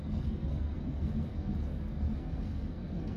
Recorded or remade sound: remade